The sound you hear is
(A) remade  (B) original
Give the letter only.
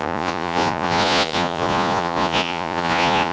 A